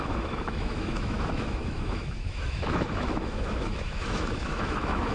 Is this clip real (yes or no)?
no